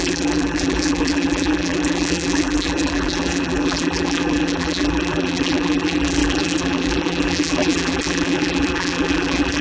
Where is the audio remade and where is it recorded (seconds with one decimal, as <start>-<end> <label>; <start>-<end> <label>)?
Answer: 0.0-9.6 remade